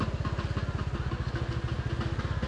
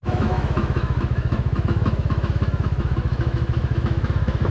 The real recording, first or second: first